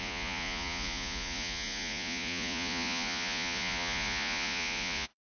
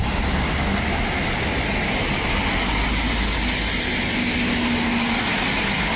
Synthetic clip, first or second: first